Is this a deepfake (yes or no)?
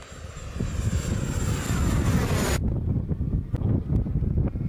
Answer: no